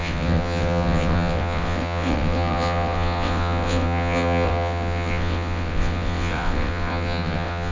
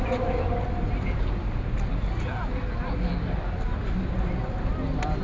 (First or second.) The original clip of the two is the second